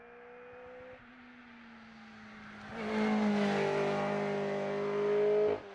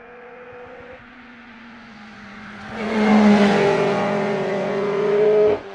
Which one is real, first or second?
first